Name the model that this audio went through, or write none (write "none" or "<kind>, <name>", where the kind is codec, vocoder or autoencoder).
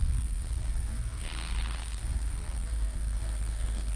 codec, SNAC